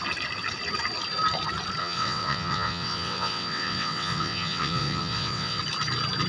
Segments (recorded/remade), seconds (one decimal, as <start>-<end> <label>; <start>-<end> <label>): 0.0-1.8 recorded; 1.8-5.6 remade; 5.6-6.3 recorded